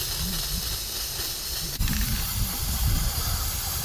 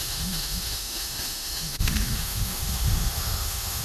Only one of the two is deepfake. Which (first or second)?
second